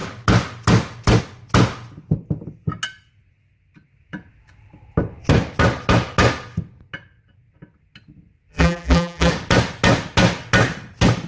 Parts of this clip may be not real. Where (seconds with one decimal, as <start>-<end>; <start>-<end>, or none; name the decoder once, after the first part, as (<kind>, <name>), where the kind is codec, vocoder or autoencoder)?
8.5-9.3 (vocoder, BigVGAN v2)